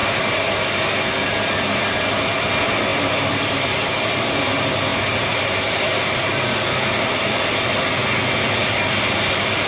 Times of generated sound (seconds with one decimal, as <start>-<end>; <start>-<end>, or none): 0.0-0.7; 4.9-6.2; 8.6-9.7